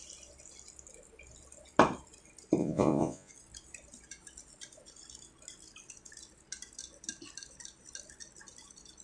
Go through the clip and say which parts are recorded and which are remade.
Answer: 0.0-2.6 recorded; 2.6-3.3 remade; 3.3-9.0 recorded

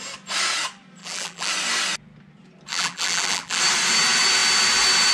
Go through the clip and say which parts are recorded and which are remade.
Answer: 0.0-1.0 recorded; 1.0-1.5 remade; 1.5-2.7 recorded; 2.7-3.6 remade; 3.6-5.1 recorded

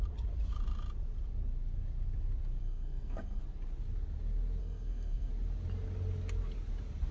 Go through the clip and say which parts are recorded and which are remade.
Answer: 0.0-2.6 recorded; 2.6-3.4 remade; 3.4-4.6 recorded; 4.6-5.3 remade; 5.3-7.1 recorded

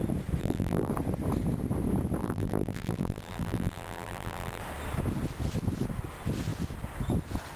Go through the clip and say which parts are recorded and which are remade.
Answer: 0.0-0.4 recorded; 0.4-0.9 remade; 0.9-2.2 recorded; 2.2-4.6 remade; 4.6-7.6 recorded

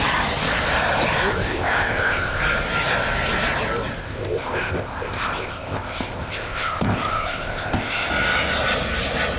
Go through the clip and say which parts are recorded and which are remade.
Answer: 0.0-1.3 recorded; 1.3-2.4 remade; 2.4-4.0 recorded; 4.0-8.1 remade; 8.1-9.4 recorded